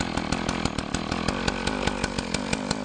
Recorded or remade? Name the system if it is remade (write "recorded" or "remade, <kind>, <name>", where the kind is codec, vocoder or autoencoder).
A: recorded